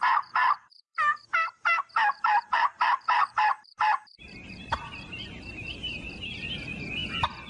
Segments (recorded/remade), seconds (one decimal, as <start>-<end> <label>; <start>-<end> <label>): 0.0-7.0 remade; 7.0-7.5 recorded